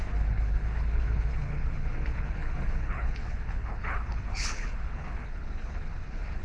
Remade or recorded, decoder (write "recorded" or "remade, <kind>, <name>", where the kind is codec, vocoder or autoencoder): remade, codec, HILCodec